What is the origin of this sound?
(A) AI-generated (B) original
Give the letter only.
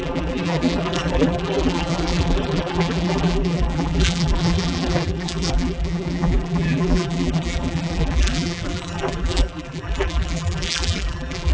A